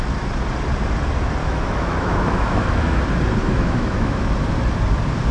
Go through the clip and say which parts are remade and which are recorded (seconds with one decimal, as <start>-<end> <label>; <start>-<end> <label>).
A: 0.0-1.4 recorded; 1.4-3.0 remade; 3.0-3.4 recorded; 3.4-4.2 remade; 4.2-5.3 recorded